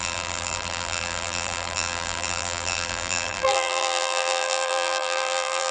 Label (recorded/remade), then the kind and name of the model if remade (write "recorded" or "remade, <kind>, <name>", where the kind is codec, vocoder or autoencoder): remade, vocoder, BigVGAN v2